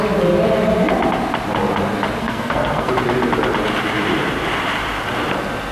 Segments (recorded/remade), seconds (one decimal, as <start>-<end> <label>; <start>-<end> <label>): 0.0-2.2 recorded; 2.2-2.9 remade; 2.9-5.7 recorded